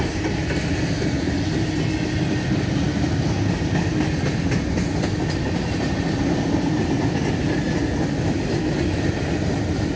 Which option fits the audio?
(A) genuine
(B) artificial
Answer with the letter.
A